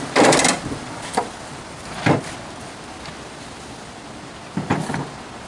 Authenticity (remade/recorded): recorded